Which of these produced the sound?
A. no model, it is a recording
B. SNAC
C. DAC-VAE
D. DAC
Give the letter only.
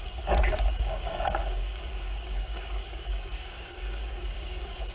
D